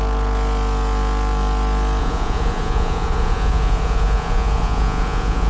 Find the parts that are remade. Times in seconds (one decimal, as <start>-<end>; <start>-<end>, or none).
2.0-5.5